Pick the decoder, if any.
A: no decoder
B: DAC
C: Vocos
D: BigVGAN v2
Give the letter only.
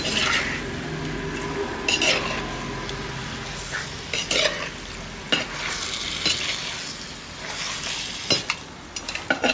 A